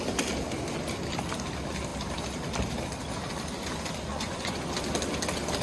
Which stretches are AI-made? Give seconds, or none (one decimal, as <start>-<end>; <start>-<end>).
4.1-4.6